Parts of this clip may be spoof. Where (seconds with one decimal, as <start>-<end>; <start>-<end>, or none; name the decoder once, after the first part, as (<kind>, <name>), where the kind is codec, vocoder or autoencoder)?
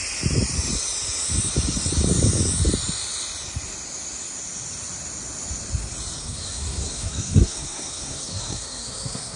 6.2-9.4 (codec, SNAC)